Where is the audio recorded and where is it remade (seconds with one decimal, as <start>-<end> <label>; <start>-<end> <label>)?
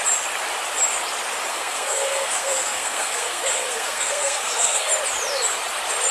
0.0-1.5 recorded; 1.5-4.9 remade; 4.9-6.1 recorded